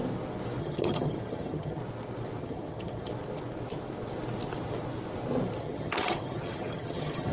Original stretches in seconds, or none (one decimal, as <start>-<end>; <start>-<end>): 0.0-0.6; 1.8-2.4; 3.1-5.6